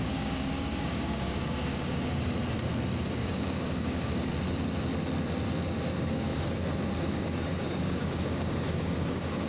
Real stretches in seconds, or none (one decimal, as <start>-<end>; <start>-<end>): 2.4-3.0; 4.3-6.0; 6.6-7.1